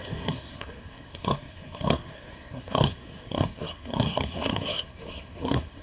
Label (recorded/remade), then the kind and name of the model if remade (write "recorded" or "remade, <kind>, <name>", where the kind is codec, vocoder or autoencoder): remade, codec, SNAC